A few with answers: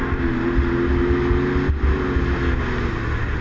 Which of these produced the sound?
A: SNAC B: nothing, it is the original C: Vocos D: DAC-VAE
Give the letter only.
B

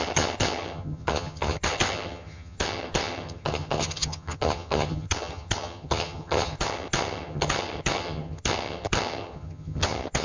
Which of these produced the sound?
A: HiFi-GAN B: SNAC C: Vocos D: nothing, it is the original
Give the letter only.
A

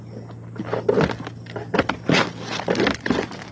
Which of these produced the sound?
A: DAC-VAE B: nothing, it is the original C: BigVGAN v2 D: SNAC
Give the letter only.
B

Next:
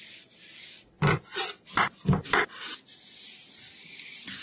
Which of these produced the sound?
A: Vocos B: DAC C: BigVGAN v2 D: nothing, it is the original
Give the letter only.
D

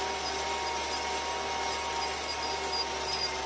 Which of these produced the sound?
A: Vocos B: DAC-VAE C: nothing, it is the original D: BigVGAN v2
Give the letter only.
C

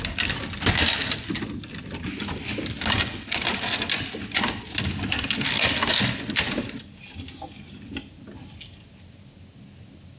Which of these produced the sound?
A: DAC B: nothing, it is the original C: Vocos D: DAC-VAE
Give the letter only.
B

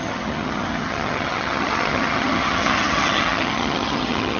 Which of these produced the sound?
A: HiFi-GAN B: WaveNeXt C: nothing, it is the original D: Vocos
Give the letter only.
A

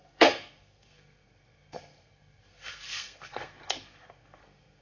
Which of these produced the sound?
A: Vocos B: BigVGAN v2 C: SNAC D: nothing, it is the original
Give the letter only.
C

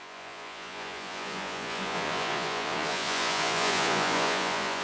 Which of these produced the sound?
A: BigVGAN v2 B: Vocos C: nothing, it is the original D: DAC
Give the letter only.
B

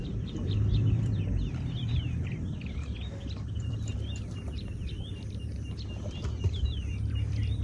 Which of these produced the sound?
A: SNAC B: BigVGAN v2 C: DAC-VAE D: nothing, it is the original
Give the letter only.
B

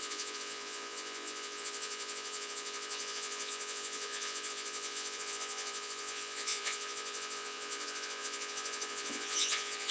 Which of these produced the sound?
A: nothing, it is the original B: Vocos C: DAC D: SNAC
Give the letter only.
B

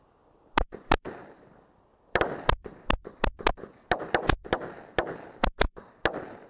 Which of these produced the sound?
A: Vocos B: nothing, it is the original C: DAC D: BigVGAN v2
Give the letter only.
B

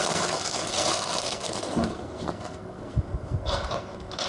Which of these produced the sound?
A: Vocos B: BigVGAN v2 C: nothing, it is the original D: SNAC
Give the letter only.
D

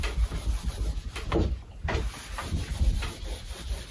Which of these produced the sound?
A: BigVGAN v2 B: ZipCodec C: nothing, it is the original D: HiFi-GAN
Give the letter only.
A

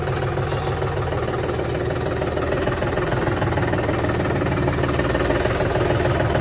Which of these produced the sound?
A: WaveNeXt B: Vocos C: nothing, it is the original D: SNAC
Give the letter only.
C